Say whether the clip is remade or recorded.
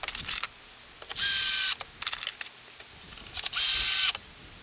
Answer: recorded